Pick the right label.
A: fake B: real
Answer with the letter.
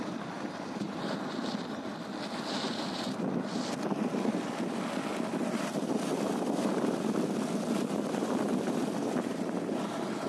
B